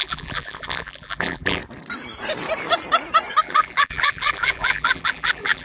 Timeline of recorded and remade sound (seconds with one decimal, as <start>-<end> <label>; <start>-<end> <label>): 0.0-1.6 remade; 1.6-3.4 recorded; 3.4-5.6 remade